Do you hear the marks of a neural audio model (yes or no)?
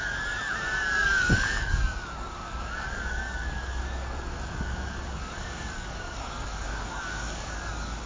yes